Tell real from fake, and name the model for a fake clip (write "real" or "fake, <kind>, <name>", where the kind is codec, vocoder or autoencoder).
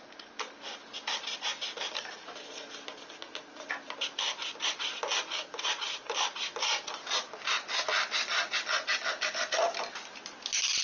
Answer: real